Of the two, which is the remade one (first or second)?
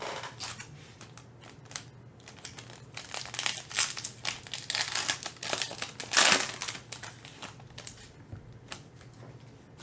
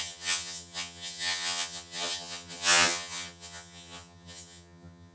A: second